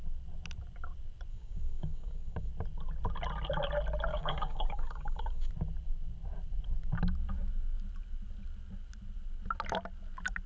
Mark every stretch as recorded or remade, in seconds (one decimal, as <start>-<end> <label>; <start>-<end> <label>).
0.0-1.3 recorded; 1.3-2.5 remade; 2.5-4.1 recorded; 4.1-5.5 remade; 5.5-10.5 recorded